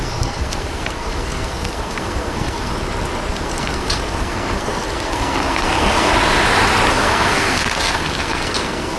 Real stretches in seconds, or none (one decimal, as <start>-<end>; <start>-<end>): 2.7-3.3; 6.1-6.9